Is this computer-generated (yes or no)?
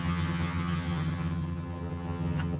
yes